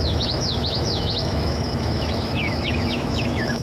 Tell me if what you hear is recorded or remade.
remade